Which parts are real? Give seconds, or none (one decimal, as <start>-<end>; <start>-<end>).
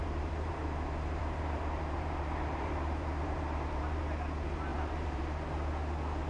0.6-1.2; 4.0-4.7; 5.2-6.3